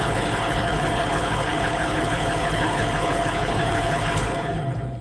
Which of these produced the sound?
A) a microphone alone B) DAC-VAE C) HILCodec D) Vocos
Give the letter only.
C